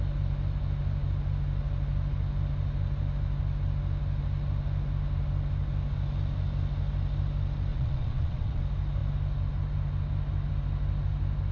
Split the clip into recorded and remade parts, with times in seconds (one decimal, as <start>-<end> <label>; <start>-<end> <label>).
0.0-7.7 recorded; 7.7-8.6 remade; 8.6-11.5 recorded